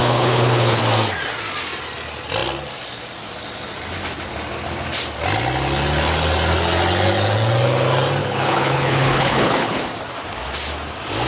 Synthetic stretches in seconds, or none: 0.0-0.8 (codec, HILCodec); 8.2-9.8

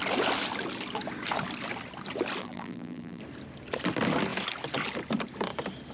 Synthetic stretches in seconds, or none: 2.4-3.2 (vocoder, BigVGAN v2)

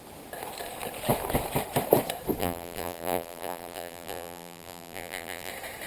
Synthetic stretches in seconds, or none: 2.4-5.5 (vocoder, BigVGAN v2)

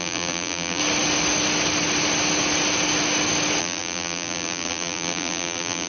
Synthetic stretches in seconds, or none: 0.0-0.8 (vocoder, BigVGAN v2); 3.6-5.9

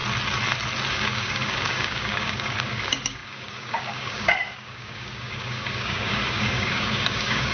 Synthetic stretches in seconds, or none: 0.9-7.5 (codec, DAC)

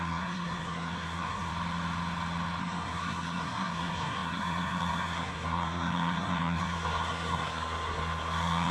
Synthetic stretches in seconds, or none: 0.0-1.5 (codec, SNAC); 2.6-8.7